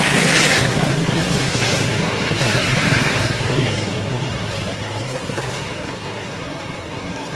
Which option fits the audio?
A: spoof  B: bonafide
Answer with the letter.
A